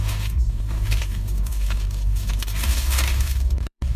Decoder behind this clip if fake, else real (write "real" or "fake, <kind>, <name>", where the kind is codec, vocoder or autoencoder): fake, codec, DAC